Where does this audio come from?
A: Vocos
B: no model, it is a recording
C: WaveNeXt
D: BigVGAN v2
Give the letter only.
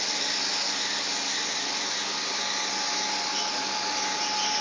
B